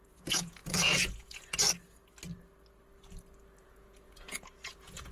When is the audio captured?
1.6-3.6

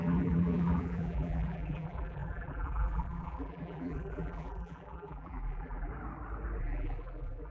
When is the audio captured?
5.9-6.6

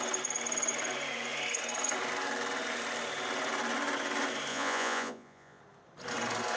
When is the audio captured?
0.0-4.5; 5.6-6.6

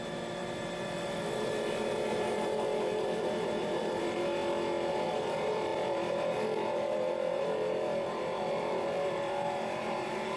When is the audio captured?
4.4-4.9

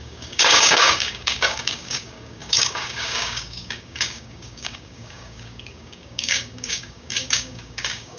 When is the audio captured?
none

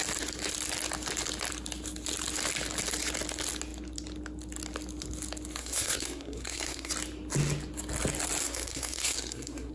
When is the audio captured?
0.0-5.6; 6.9-8.4

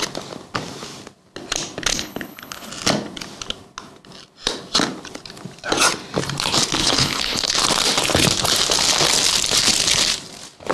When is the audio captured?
0.0-1.9; 2.7-6.8; 7.5-10.7

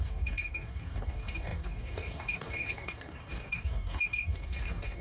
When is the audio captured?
none